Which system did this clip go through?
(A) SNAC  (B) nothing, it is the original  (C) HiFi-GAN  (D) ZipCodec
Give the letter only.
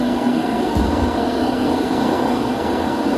A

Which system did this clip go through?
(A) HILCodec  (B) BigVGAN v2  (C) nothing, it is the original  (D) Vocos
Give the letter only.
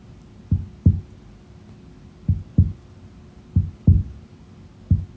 C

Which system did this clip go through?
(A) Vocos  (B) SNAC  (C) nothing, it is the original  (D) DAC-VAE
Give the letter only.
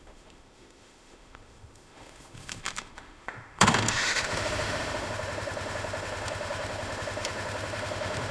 D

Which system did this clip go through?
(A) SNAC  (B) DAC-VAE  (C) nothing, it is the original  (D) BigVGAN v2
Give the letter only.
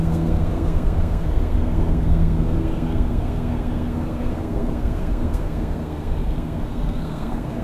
A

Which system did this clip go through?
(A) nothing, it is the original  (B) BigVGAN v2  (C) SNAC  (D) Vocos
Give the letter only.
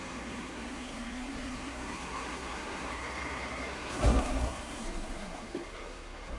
C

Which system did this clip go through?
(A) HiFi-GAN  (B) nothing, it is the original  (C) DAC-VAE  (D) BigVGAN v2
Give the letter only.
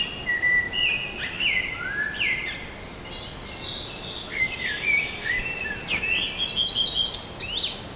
B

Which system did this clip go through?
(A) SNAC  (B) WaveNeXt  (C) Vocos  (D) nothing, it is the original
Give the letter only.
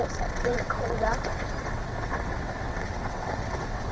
B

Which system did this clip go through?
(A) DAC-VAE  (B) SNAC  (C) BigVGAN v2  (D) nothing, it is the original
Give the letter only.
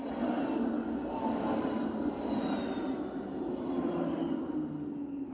D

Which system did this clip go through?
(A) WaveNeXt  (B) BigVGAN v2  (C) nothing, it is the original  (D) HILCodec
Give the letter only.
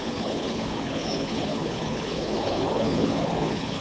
D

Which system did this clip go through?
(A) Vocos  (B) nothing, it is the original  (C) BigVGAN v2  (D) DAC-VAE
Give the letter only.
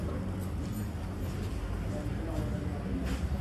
B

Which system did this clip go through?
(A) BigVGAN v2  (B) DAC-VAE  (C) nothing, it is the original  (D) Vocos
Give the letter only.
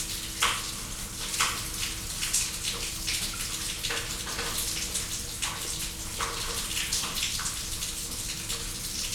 C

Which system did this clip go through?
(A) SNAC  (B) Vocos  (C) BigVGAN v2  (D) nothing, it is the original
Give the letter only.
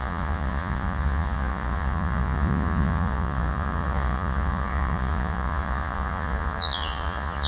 B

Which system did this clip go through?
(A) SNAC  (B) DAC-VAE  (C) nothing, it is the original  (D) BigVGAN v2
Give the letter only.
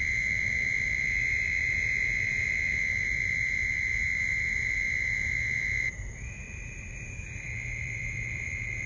D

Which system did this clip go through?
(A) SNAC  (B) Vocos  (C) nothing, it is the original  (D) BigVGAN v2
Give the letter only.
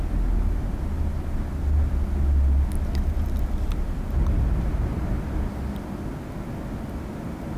C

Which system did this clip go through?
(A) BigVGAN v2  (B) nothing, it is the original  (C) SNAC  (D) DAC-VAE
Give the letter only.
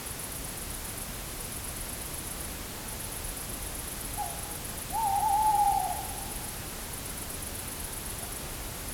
B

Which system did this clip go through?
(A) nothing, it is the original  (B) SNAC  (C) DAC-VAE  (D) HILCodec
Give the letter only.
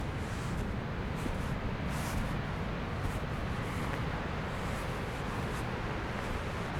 A